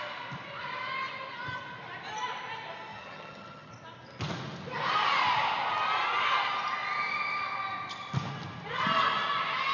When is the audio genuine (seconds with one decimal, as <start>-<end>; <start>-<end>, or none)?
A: 0.0-2.9; 3.7-9.7

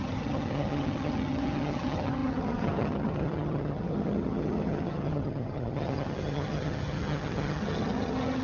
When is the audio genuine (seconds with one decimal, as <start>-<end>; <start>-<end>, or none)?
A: none

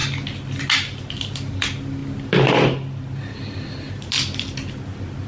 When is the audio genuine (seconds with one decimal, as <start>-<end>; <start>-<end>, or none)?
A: 0.0-5.3

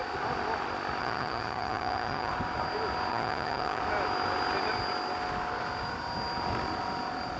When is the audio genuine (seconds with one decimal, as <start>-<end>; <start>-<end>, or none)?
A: 0.0-1.0; 2.3-3.1; 3.8-7.4

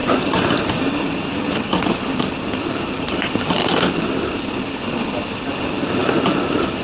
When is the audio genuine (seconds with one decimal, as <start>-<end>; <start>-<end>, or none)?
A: 0.0-6.8

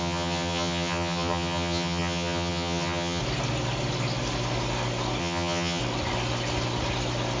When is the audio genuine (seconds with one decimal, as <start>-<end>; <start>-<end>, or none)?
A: 3.2-5.2; 5.8-7.4